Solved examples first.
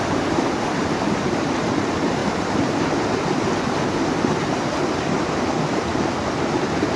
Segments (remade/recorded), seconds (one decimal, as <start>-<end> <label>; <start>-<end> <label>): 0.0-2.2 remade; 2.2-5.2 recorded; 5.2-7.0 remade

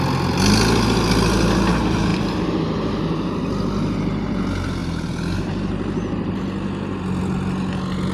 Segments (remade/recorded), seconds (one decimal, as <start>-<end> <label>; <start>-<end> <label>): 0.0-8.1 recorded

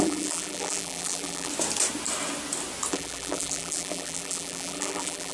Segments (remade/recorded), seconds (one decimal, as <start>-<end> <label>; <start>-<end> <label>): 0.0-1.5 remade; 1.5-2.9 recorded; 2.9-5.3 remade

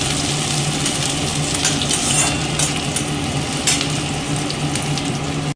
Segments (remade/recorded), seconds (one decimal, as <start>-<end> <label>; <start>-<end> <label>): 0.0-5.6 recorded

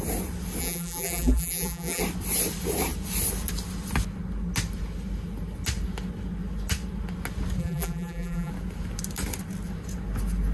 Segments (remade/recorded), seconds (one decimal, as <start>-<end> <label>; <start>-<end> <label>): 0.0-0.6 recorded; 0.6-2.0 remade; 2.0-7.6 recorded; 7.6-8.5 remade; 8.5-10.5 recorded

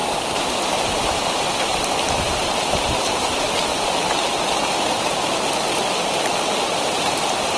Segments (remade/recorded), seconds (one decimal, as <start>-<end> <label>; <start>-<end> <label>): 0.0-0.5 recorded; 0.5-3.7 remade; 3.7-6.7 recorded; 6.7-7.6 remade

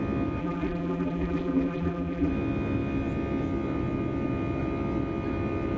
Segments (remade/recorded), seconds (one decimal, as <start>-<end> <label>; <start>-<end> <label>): 0.0-0.4 recorded; 0.4-2.3 remade; 2.3-5.8 recorded

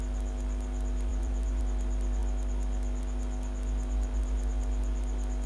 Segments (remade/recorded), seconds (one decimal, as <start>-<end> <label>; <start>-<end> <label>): 0.0-1.1 recorded; 1.1-1.6 remade; 1.6-5.5 recorded